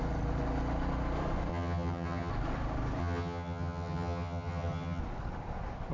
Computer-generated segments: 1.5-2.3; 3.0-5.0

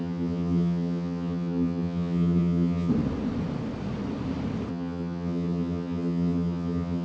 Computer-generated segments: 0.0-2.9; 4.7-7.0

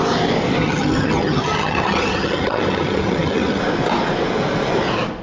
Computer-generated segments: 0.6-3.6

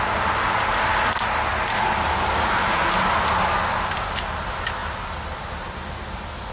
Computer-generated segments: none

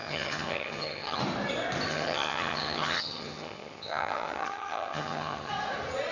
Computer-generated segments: 0.0-1.2; 1.9-5.5

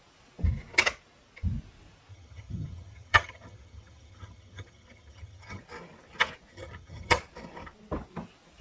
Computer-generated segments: 2.1-5.6; 6.5-7.2

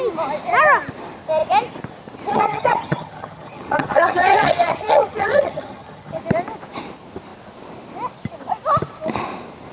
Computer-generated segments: 2.3-6.2